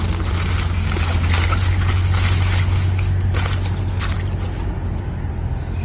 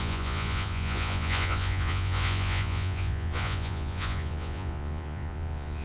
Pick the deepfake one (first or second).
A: second